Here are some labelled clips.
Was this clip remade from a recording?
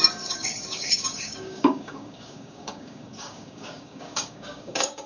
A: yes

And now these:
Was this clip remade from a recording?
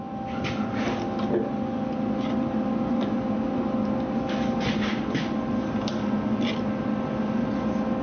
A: no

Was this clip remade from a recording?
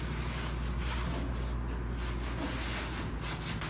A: no